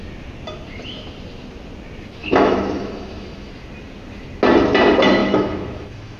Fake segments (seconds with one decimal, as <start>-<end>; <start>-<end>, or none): 2.2-3.5; 5.2-6.2